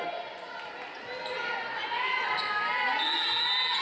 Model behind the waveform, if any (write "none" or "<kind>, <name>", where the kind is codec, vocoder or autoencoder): none